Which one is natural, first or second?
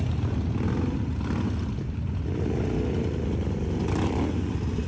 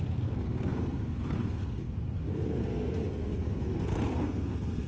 first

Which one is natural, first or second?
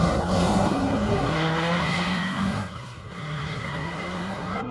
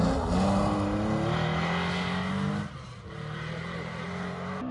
second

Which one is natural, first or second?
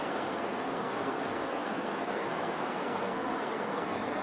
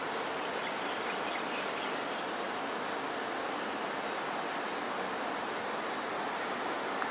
second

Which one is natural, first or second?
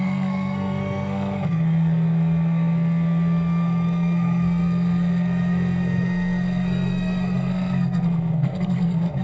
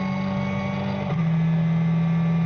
second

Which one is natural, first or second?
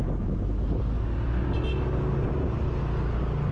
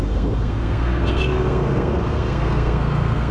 first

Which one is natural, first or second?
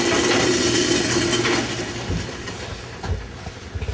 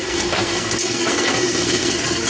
first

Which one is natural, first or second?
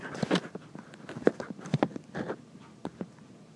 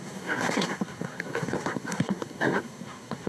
first